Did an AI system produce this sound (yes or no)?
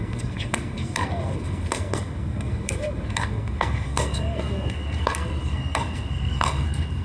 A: yes